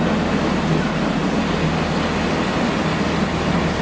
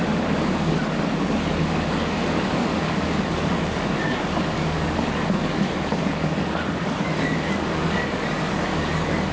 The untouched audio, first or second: first